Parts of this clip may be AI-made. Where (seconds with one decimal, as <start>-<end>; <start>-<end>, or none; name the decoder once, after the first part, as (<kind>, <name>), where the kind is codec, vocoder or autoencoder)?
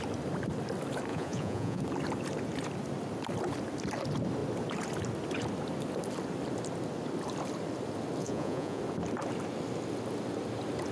1.1-1.8 (vocoder, Vocos); 8.2-8.8